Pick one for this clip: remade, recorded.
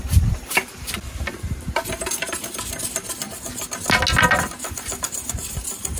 recorded